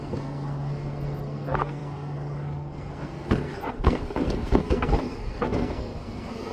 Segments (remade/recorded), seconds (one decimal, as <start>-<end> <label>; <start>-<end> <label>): 0.0-6.5 remade